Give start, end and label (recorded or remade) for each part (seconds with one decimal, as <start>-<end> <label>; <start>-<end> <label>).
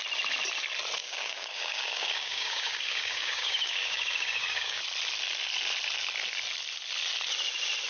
0.0-1.0 recorded; 1.0-4.8 remade; 4.8-7.9 recorded